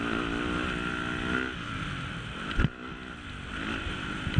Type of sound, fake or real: real